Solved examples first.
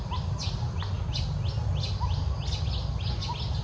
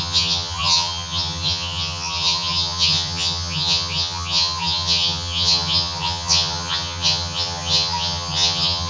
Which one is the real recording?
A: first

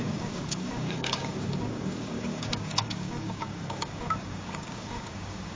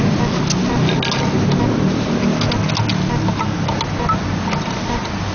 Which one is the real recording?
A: second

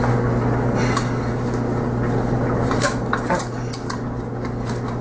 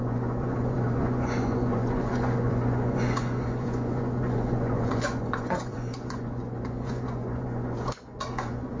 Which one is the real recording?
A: first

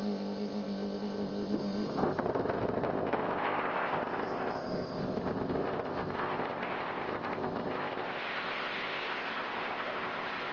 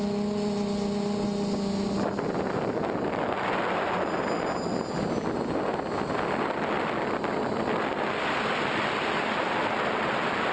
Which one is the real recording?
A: second